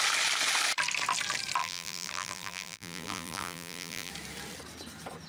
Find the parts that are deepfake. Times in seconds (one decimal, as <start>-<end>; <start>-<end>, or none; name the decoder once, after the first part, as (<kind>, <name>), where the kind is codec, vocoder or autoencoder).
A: 1.6-4.1 (vocoder, BigVGAN v2)